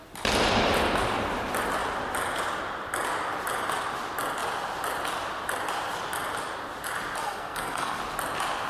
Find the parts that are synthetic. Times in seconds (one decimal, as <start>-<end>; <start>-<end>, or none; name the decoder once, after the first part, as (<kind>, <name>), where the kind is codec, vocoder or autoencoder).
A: 7.2-8.0 (codec, SNAC)